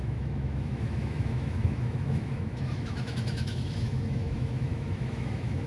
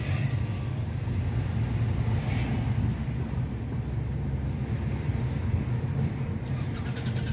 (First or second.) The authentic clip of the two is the second